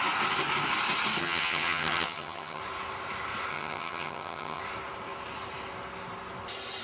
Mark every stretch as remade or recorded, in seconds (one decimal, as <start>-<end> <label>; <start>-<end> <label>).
0.0-1.2 recorded; 1.2-2.6 remade; 2.6-3.5 recorded; 3.5-4.6 remade; 4.6-6.8 recorded